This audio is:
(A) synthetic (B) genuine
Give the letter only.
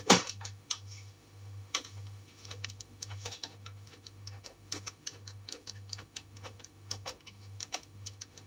A